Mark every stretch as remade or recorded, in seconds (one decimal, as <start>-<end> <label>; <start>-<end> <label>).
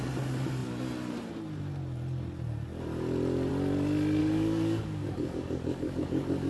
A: 0.0-4.2 recorded; 4.2-6.5 remade